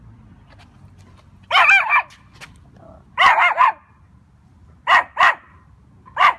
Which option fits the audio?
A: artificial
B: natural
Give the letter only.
B